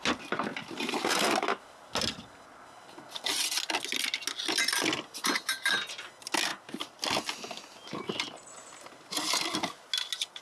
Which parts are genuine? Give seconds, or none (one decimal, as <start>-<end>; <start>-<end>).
0.0-10.4